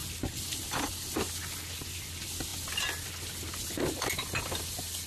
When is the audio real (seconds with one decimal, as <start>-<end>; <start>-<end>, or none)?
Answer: 0.0-5.1